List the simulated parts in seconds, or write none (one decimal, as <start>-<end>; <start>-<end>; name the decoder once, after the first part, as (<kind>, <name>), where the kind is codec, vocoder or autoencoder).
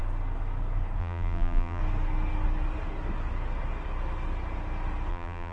1.0-1.8 (vocoder, BigVGAN v2); 5.1-5.5